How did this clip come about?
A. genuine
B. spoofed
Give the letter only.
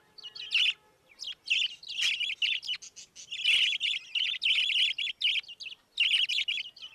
A